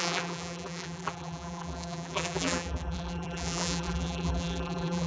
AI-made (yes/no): yes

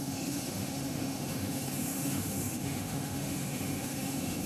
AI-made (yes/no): yes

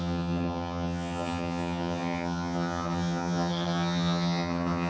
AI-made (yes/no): yes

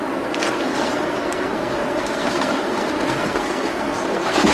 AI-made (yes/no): yes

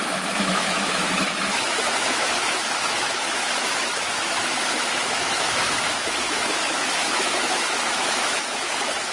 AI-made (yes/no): yes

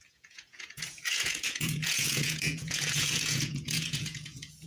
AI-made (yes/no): yes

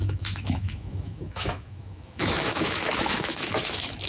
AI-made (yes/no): yes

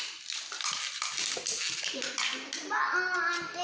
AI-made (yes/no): no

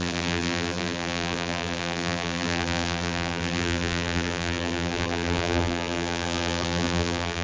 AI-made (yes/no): yes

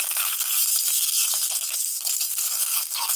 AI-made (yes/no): yes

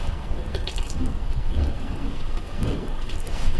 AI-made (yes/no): yes